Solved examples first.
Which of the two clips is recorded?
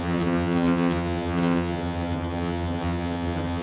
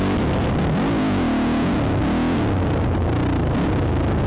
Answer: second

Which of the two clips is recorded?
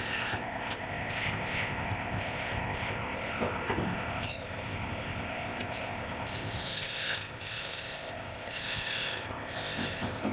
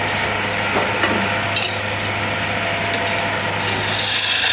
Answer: second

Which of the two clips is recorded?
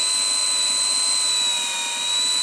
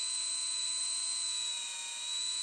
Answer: first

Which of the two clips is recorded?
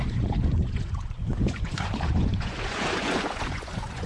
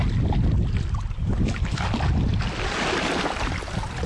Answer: second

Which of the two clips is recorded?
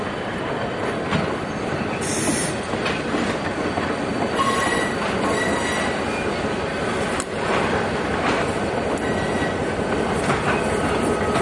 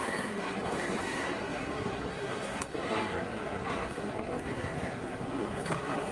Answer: first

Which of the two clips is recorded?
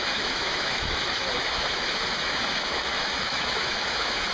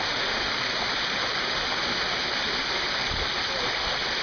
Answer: second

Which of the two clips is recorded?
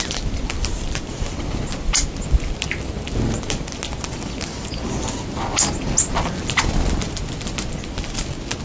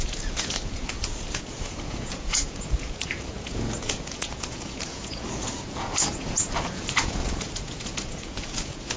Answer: first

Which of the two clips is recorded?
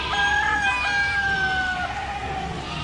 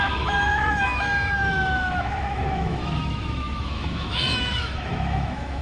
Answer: first